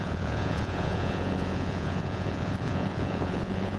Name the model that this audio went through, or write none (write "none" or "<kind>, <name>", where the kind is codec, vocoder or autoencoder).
vocoder, Vocos